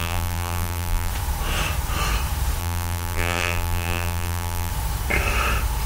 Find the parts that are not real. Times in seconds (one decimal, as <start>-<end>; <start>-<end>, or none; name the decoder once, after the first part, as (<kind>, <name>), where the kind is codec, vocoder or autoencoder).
0.0-1.1 (vocoder, BigVGAN v2); 2.6-4.7